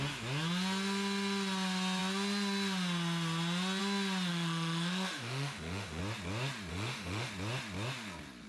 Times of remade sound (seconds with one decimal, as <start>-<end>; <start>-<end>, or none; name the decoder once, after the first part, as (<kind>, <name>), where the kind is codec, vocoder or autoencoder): 4.3-6.0 (autoencoder, DAC-VAE); 6.7-7.3